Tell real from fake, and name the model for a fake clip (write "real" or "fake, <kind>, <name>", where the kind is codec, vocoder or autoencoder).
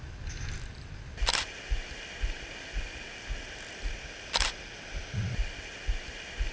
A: real